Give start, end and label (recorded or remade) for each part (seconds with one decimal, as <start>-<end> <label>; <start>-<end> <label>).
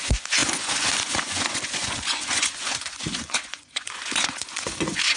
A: 0.0-5.2 remade